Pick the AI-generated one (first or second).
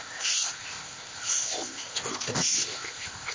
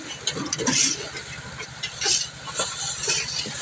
first